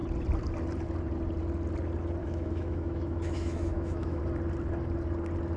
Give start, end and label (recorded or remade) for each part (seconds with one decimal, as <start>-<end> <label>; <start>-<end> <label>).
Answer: 0.0-2.2 recorded; 2.2-4.2 remade; 4.2-5.6 recorded